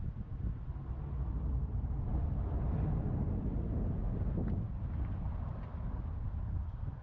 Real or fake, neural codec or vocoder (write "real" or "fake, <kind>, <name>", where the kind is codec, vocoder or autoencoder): real